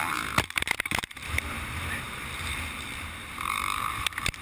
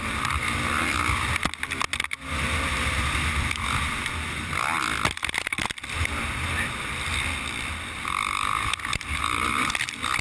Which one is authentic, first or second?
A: second